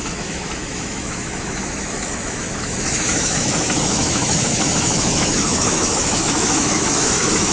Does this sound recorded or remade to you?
remade